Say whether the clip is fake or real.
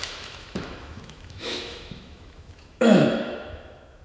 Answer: fake